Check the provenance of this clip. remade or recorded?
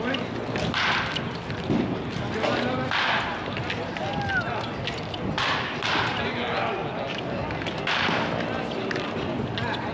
recorded